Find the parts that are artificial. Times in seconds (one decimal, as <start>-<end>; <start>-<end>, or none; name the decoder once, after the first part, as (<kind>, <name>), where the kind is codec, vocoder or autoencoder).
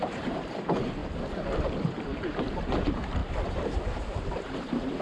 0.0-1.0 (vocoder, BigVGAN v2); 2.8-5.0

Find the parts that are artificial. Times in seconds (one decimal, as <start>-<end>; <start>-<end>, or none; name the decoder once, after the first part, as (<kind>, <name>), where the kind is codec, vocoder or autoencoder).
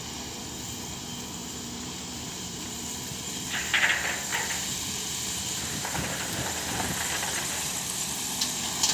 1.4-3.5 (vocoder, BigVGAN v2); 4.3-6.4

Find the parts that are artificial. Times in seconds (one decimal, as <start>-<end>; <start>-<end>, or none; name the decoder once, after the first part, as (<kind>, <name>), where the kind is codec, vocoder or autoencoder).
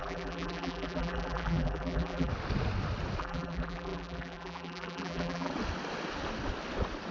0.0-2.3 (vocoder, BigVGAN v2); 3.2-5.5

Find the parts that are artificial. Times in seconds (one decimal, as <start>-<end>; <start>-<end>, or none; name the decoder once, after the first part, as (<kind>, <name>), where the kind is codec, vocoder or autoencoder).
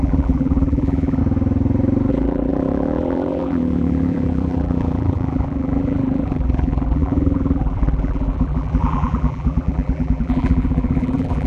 0.0-1.2 (vocoder, BigVGAN v2); 2.1-11.5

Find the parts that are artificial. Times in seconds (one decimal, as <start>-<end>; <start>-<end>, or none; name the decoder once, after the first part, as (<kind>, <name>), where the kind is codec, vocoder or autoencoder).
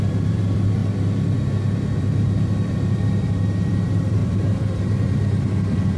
0.0-0.8 (vocoder, BigVGAN v2); 2.0-6.0